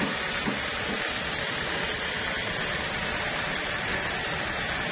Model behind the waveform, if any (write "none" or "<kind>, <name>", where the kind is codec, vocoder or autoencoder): none